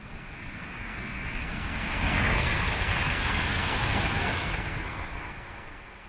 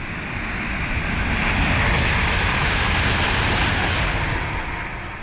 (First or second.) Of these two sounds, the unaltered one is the second